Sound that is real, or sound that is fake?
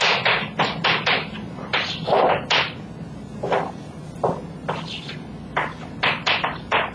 real